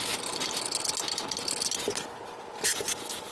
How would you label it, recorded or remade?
recorded